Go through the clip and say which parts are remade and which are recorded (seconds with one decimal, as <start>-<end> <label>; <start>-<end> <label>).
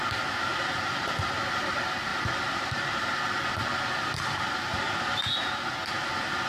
0.0-0.5 recorded; 0.5-1.1 remade; 1.1-2.1 recorded; 2.1-3.2 remade; 3.2-4.7 recorded; 4.7-5.3 remade; 5.3-6.5 recorded